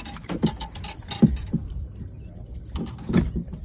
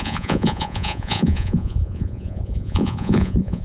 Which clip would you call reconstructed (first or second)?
second